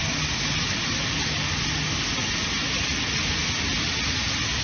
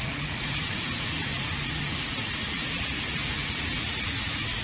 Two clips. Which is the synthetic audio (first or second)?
second